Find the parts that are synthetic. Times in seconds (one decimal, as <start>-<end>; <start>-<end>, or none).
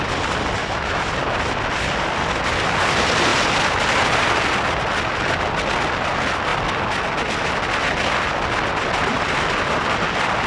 0.6-1.1